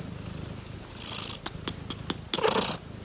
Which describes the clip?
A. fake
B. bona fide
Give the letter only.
B